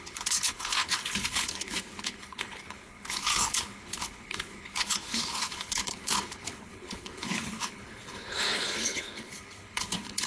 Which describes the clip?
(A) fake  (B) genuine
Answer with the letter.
A